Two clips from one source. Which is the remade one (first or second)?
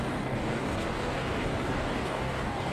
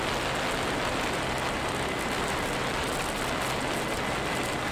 first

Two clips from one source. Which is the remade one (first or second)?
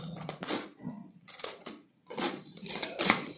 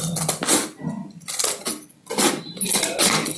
first